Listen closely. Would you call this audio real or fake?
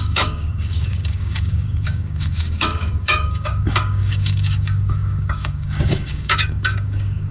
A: fake